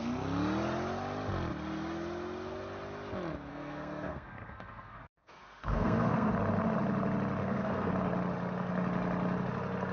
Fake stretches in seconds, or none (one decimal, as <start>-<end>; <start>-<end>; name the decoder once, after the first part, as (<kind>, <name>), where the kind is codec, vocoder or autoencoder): 3.5-6.3 (codec, SNAC); 7.4-7.9

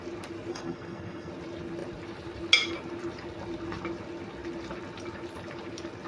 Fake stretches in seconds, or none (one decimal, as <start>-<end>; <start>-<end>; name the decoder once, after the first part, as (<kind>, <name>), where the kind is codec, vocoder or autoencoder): 0.5-1.3 (codec, SNAC)

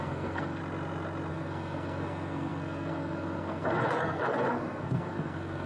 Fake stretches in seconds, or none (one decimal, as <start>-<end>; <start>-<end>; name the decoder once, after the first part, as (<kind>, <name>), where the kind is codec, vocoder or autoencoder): 0.0-0.6 (codec, SNAC); 1.3-5.7

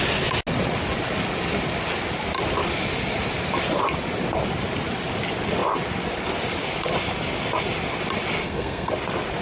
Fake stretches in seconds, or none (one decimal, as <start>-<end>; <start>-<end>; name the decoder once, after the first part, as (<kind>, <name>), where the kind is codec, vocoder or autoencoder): 8.4-8.9 (codec, SNAC)

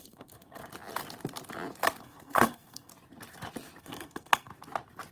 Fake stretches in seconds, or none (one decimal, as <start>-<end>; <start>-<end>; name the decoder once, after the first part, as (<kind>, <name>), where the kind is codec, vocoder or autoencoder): 0.0-0.6 (codec, SNAC); 2.0-2.9; 3.8-4.5

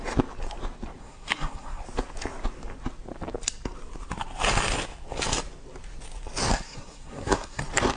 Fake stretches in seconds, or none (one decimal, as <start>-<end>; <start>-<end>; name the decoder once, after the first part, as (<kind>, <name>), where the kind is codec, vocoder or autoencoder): 1.0-1.8 (codec, SNAC); 6.5-7.6

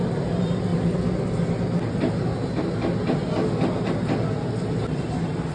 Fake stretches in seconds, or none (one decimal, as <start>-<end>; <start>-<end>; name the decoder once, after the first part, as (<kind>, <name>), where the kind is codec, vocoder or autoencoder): none